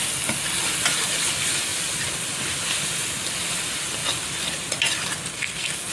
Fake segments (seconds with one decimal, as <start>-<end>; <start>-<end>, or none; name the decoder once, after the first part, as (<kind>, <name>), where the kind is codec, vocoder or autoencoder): 5.3-5.9 (codec, SNAC)